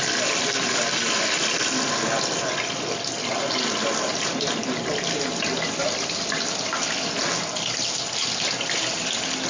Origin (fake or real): real